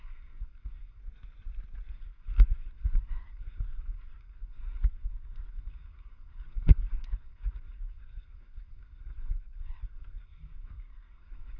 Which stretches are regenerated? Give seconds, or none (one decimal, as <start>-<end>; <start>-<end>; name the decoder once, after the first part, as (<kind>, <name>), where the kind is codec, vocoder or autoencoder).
0.0-1.0 (codec, SNAC); 1.9-11.6

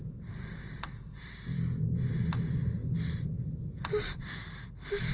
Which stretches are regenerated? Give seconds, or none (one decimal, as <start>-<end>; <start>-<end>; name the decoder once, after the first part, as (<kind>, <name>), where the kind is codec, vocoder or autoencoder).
0.0-2.8 (vocoder, BigVGAN v2); 3.9-5.1

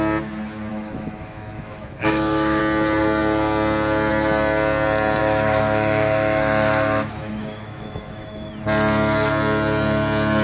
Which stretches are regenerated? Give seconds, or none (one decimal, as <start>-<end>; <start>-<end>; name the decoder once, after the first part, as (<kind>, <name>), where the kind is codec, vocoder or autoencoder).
0.7-2.6 (autoencoder, DAC-VAE); 5.2-8.5

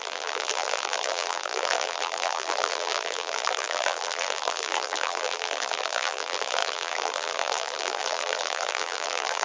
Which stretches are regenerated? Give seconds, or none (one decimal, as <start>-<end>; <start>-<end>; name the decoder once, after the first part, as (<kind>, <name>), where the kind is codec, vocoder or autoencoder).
0.0-9.4 (vocoder, BigVGAN v2)

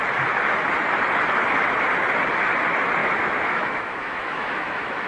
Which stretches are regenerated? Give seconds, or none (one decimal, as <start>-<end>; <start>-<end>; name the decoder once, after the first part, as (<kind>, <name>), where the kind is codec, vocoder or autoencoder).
3.0-5.1 (autoencoder, DAC-VAE)

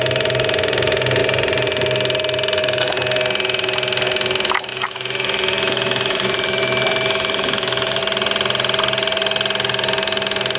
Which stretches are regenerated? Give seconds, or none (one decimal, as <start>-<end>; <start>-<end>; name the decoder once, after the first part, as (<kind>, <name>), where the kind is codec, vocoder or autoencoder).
4.7-8.0 (autoencoder, DAC-VAE)